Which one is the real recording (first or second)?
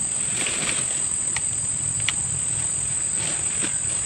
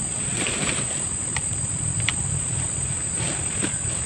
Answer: first